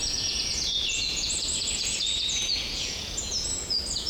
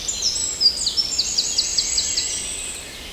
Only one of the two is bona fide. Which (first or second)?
second